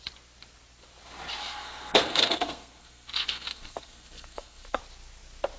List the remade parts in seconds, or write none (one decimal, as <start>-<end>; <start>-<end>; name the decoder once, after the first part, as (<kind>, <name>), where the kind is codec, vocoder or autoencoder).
1.4-4.8 (codec, SNAC)